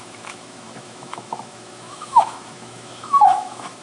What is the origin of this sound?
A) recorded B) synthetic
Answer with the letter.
B